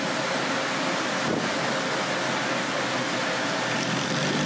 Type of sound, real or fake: real